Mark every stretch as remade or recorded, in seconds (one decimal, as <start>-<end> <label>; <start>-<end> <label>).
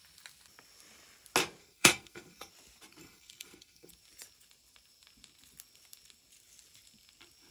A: 0.0-1.6 recorded; 1.6-2.5 remade; 2.5-3.0 recorded; 3.0-3.9 remade; 3.9-7.5 recorded